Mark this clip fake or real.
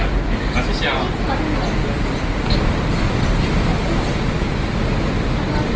real